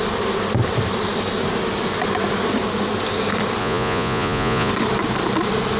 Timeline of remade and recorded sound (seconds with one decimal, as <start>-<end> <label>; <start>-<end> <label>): 0.0-3.6 recorded; 3.6-4.7 remade; 4.7-5.8 recorded